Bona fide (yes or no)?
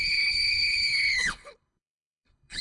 no